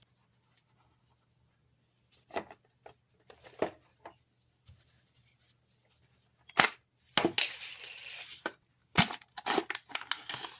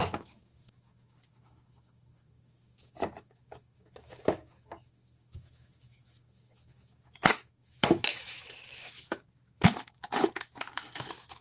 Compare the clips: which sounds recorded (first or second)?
first